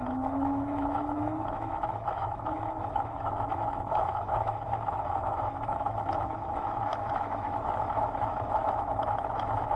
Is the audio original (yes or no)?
no